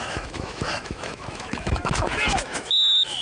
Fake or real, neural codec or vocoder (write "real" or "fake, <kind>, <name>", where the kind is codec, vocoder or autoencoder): fake, autoencoder, DAC-VAE